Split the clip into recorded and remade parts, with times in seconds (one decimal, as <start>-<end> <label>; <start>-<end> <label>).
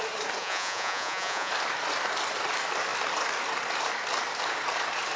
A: 0.0-0.4 recorded; 0.4-1.5 remade; 1.5-5.2 recorded